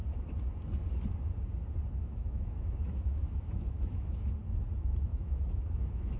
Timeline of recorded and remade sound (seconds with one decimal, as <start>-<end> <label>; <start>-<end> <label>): 0.0-2.0 recorded; 2.0-4.3 remade; 4.3-5.1 recorded; 5.1-6.2 remade